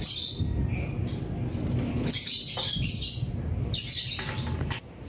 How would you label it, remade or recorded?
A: recorded